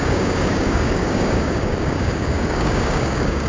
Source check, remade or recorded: remade